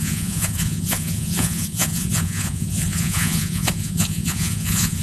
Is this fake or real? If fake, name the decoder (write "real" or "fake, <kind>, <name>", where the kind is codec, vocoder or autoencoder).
fake, vocoder, Vocos